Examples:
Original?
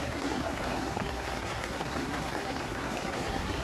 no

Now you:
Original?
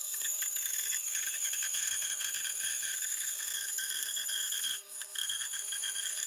no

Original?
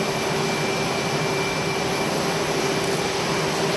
yes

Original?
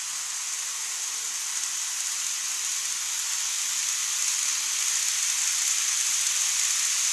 yes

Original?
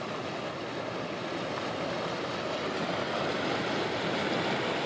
yes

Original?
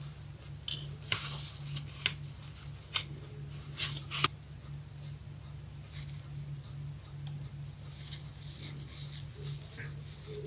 yes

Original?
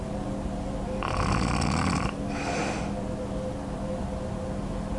yes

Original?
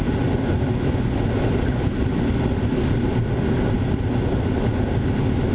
yes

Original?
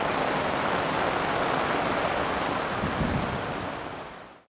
yes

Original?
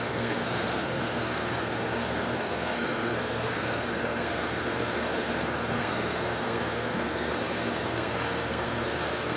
no